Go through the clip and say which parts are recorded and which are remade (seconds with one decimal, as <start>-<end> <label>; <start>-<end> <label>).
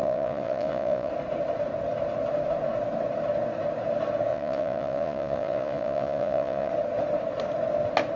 0.0-1.1 remade; 1.1-4.3 recorded; 4.3-6.7 remade; 6.7-8.2 recorded